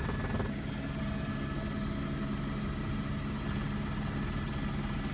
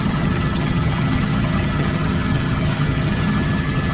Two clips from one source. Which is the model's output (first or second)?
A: second